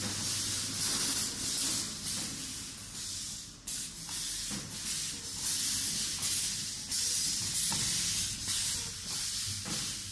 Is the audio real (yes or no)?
yes